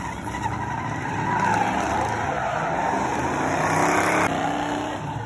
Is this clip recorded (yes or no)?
yes